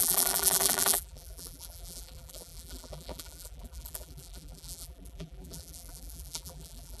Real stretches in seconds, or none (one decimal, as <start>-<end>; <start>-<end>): none